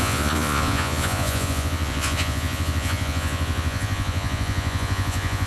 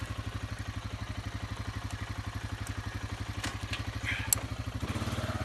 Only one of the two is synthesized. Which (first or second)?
first